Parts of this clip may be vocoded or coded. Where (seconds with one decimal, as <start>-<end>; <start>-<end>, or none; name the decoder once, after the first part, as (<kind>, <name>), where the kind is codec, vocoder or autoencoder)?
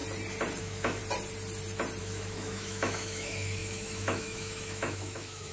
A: 0.6-1.0 (autoencoder, DAC-VAE); 2.0-5.5